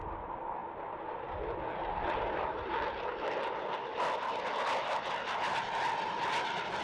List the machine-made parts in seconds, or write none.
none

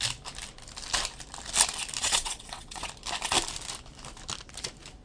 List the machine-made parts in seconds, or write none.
2.0-2.9

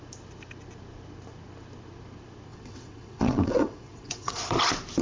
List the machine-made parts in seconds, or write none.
2.5-4.4

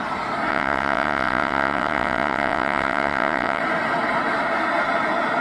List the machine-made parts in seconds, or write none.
0.5-3.6

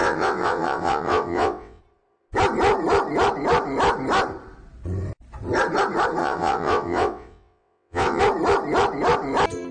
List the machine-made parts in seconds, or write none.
0.0-1.8; 6.2-8.2

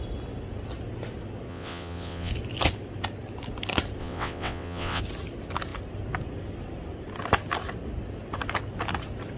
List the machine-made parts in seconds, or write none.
1.5-2.3; 4.0-5.0